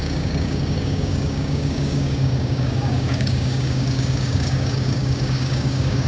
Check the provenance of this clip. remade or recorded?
remade